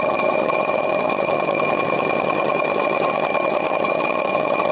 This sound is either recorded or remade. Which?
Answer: remade